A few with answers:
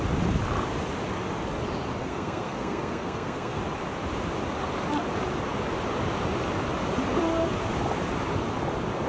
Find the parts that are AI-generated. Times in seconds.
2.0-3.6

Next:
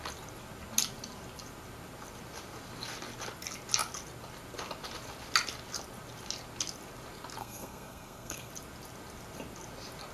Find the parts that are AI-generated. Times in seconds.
7.4-8.5

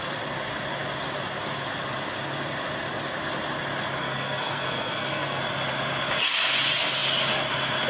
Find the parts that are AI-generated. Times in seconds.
4.0-5.4

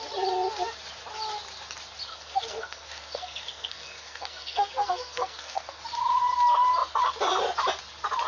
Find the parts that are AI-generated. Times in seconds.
2.1-5.8

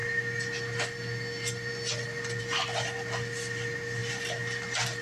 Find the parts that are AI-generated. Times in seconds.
none